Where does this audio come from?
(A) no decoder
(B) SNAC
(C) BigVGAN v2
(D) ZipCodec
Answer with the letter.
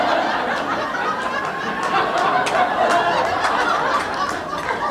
A